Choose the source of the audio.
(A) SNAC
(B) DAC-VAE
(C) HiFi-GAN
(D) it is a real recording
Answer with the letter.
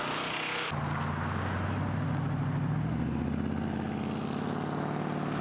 D